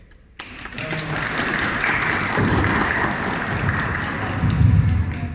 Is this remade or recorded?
recorded